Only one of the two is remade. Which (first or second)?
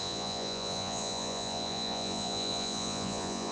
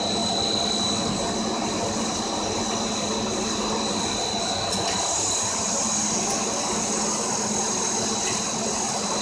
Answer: first